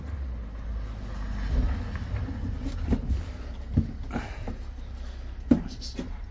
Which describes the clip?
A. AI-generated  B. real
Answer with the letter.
B